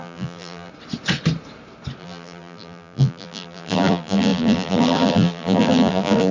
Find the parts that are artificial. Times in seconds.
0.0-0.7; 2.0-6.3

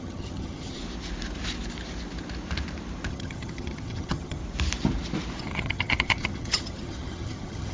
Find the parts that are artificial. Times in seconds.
0.0-0.8; 3.1-4.4; 5.4-7.7

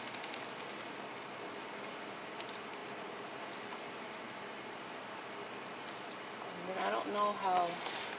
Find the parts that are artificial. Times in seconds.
none

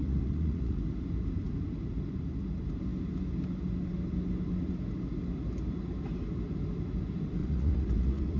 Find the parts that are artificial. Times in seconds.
0.0-0.8; 7.4-8.4

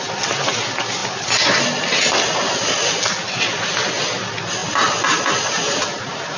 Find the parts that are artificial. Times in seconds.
none

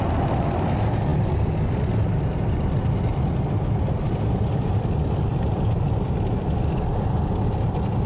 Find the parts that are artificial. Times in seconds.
none

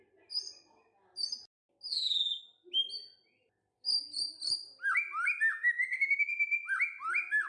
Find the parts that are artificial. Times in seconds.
1.9-2.4